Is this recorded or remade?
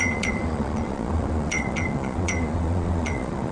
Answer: remade